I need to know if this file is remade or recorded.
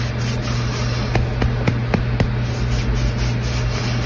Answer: recorded